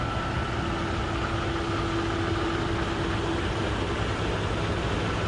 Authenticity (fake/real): real